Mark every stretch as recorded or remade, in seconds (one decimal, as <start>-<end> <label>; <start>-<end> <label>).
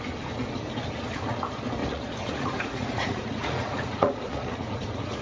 0.0-1.8 recorded; 1.8-5.2 remade